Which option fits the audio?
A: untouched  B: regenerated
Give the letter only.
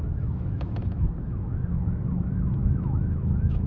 B